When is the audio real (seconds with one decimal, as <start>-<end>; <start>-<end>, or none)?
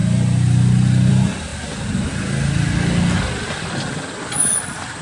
0.0-5.0